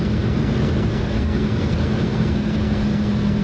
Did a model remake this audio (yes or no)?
yes